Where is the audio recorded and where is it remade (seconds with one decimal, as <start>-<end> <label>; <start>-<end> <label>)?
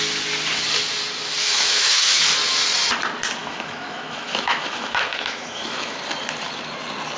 0.0-1.4 recorded; 1.4-2.2 remade; 2.2-3.4 recorded; 3.4-6.0 remade; 6.0-7.2 recorded